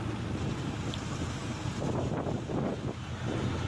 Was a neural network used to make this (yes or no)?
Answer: no